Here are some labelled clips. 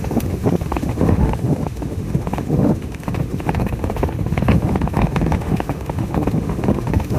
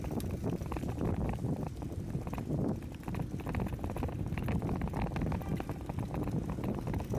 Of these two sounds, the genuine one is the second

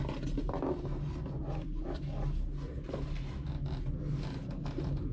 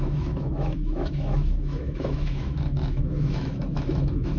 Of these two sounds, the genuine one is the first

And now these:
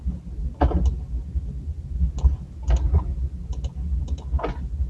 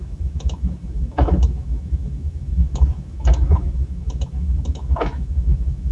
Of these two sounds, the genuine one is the first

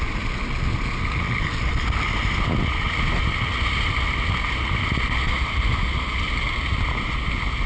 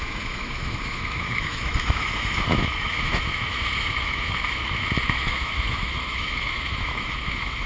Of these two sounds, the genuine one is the first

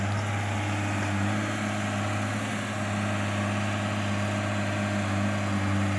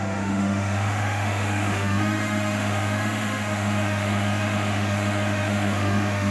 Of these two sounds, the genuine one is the first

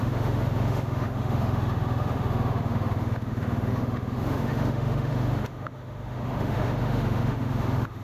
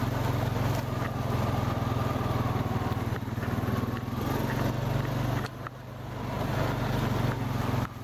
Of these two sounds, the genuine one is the second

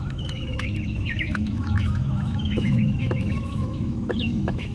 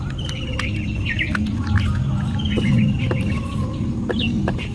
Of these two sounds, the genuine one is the second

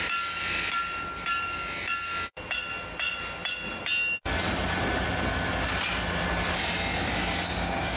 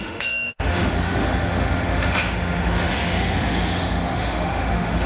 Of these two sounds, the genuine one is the first